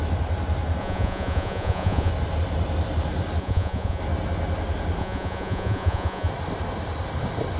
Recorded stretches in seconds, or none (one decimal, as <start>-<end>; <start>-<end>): 0.0-0.8; 2.1-3.4; 4.0-5.0; 6.3-7.6